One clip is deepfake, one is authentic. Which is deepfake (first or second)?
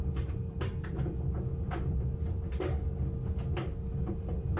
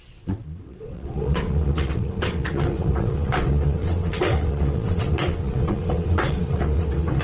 second